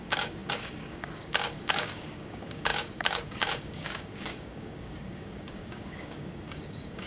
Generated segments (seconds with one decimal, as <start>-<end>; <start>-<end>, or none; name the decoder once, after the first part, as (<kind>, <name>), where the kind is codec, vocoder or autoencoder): 0.0-7.1 (codec, DAC)